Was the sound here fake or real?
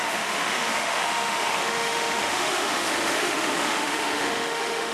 fake